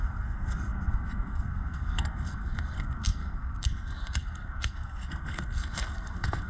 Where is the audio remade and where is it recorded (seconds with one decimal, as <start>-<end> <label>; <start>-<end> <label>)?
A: 0.0-6.5 remade